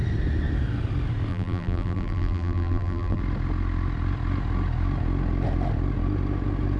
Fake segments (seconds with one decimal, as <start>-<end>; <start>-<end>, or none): 1.3-3.2